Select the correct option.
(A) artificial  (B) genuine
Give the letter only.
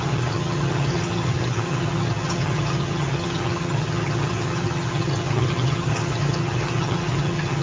A